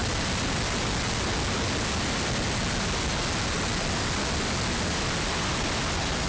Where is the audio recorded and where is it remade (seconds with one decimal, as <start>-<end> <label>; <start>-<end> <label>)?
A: 0.0-6.3 recorded